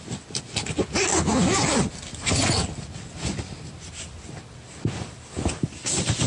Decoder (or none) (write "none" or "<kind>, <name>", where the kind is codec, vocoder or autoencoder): none